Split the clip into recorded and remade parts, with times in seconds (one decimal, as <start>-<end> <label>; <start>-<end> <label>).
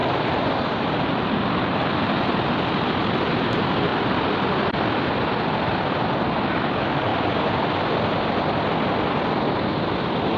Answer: 0.0-1.9 remade; 1.9-10.4 recorded